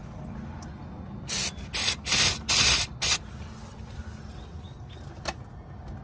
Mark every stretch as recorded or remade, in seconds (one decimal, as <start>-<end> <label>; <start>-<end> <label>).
0.0-6.0 recorded